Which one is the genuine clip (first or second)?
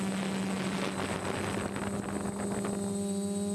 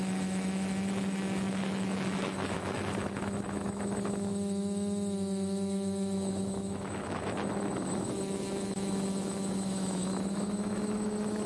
first